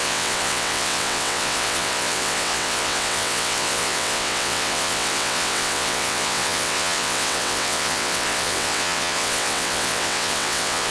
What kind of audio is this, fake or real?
fake